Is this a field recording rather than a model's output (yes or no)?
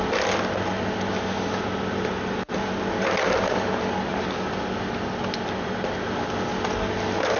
yes